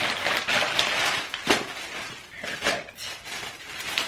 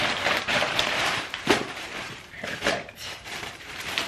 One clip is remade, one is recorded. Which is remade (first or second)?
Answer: second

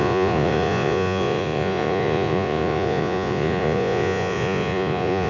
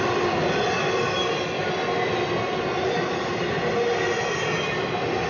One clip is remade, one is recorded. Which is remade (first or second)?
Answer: first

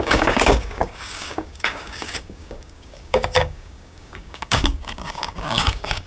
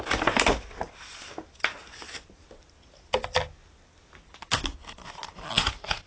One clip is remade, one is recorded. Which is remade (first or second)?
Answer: first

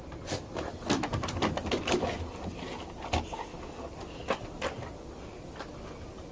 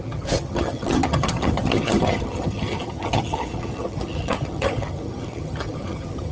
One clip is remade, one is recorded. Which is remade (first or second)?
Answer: second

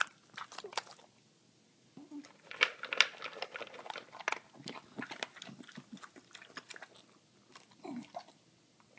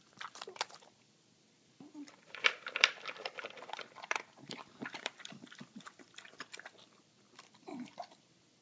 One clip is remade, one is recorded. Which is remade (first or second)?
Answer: second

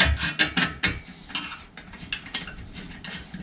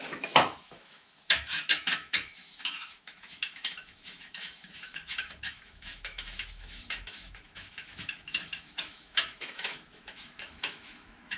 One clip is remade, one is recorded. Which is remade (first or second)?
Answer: second